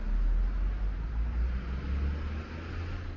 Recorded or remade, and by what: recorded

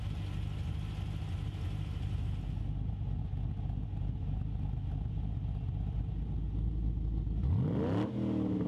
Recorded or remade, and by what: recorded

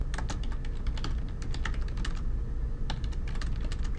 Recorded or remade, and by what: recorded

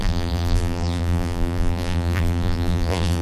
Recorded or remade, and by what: remade, vocoder, BigVGAN v2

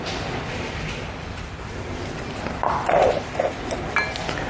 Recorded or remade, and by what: remade, vocoder, BigVGAN v2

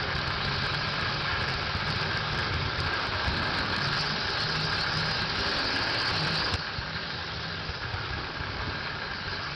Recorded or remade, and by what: recorded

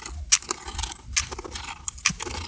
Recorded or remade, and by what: recorded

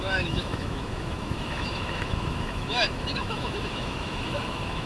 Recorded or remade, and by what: remade, autoencoder, DAC-VAE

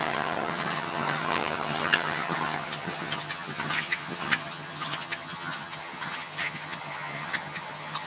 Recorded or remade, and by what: remade, vocoder, HiFi-GAN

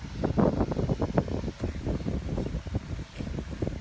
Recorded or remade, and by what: recorded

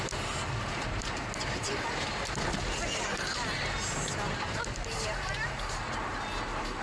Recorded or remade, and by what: recorded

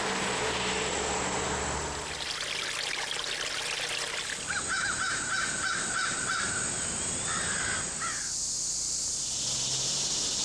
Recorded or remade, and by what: recorded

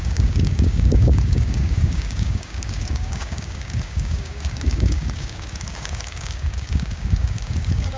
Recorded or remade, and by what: remade, codec, DAC